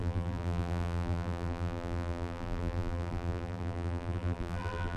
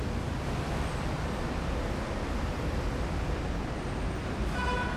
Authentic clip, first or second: second